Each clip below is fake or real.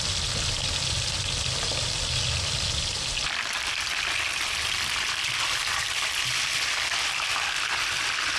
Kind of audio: real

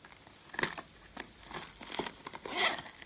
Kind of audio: real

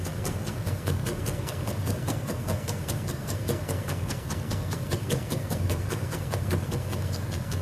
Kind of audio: fake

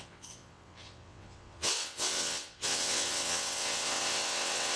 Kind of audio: fake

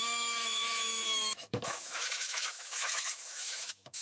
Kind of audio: fake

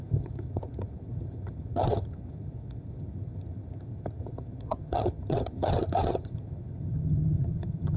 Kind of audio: fake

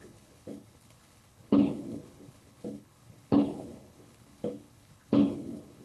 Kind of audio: fake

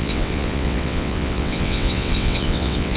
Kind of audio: fake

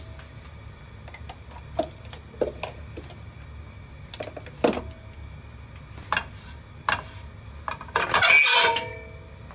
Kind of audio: real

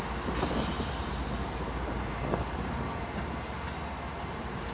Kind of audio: real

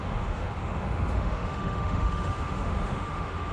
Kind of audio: fake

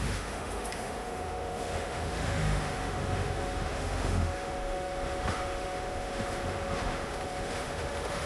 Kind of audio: fake